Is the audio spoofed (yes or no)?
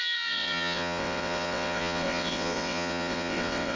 yes